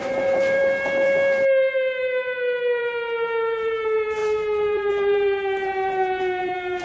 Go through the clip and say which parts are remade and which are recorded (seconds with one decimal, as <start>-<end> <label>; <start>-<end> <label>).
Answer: 0.0-0.6 remade; 0.6-2.8 recorded; 2.8-6.8 remade